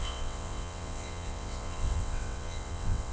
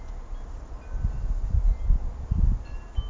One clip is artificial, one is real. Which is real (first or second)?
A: second